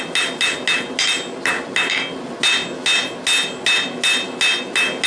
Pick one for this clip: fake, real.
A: real